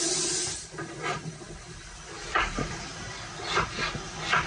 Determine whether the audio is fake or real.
real